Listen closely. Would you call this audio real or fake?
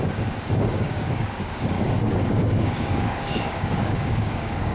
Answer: fake